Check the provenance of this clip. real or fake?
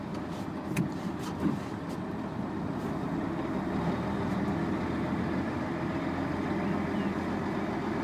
real